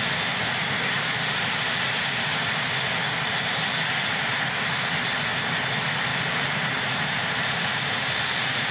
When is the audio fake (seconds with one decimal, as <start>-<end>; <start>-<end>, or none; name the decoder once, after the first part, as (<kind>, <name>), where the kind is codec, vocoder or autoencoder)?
6.1-8.7 (vocoder, BigVGAN v2)